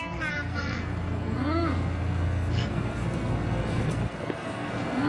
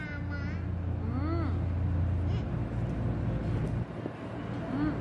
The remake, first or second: first